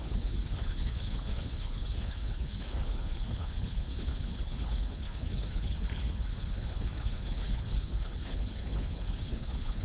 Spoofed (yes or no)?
yes